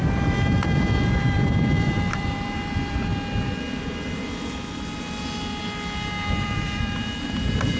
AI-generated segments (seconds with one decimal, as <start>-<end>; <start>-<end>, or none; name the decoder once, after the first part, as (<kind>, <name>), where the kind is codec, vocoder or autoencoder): 0.0-3.1 (vocoder, BigVGAN v2); 6.4-7.8